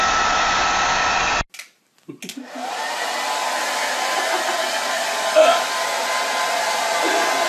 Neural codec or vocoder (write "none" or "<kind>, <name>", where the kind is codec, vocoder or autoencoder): none